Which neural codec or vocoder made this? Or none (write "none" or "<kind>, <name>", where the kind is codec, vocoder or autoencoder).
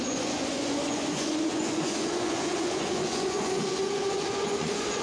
vocoder, Vocos